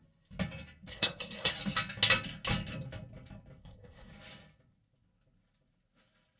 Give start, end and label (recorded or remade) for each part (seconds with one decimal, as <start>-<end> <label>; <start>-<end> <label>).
0.0-0.9 recorded; 0.9-1.5 remade; 1.5-3.6 recorded; 3.6-4.1 remade; 4.1-6.4 recorded